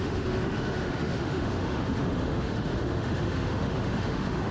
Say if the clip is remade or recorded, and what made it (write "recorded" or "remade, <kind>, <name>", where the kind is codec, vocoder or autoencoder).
remade, autoencoder, DAC-VAE